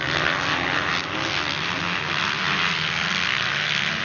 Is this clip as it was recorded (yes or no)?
yes